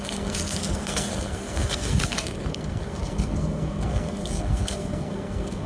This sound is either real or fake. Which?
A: fake